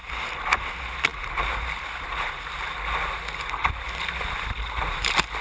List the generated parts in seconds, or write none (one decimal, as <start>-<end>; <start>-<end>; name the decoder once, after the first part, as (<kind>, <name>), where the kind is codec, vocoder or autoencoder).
none